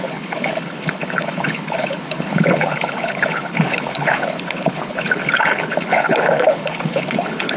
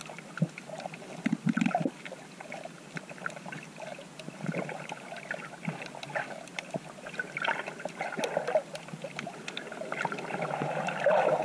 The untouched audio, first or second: second